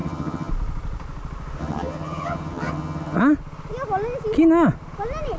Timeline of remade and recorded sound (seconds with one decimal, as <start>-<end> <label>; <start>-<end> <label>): 0.0-0.5 remade; 0.5-1.6 recorded; 1.6-3.2 remade; 3.2-5.4 recorded